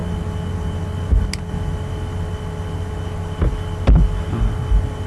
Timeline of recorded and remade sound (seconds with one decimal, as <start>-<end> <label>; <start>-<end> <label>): 0.0-5.1 recorded